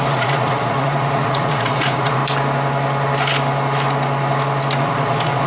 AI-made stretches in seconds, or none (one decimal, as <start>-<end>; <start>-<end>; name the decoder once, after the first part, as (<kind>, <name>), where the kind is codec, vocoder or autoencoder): 0.0-2.2 (vocoder, Vocos); 4.8-5.5